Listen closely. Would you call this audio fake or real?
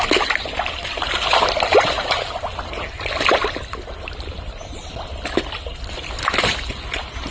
real